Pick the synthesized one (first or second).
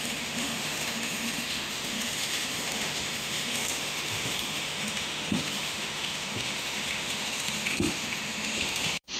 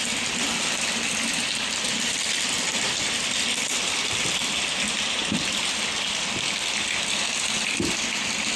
first